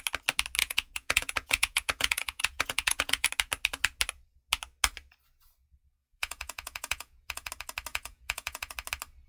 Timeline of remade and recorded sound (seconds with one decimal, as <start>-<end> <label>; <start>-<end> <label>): 0.0-0.6 recorded; 0.6-3.3 remade; 3.3-6.0 recorded; 6.0-7.5 remade; 7.5-7.9 recorded; 7.9-8.7 remade; 8.7-9.3 recorded